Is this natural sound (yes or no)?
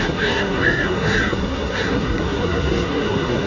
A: no